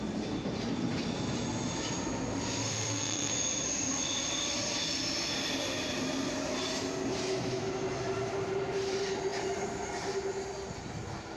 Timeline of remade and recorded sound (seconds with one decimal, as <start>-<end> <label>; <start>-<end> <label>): 0.0-2.6 recorded; 2.6-3.3 remade; 3.3-11.4 recorded